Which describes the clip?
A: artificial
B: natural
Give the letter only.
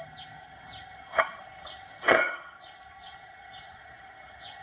A